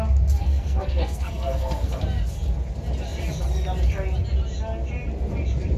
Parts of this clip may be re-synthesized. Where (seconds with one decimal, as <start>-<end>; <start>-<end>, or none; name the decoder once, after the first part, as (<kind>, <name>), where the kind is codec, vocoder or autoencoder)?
0.4-2.0 (codec, SNAC)